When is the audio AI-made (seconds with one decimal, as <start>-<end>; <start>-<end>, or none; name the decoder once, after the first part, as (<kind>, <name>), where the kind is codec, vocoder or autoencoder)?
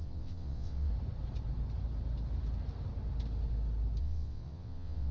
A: 0.0-0.9 (vocoder, WaveNeXt); 4.0-5.1